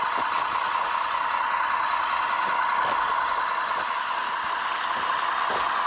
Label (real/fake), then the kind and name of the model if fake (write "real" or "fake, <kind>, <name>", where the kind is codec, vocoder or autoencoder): real